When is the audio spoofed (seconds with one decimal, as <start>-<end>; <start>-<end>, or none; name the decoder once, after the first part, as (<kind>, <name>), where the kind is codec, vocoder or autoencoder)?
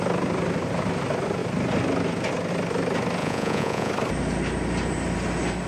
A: 3.2-3.9 (vocoder, Vocos)